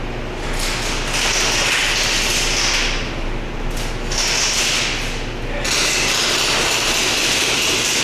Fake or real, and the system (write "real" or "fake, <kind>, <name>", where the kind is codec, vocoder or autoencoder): real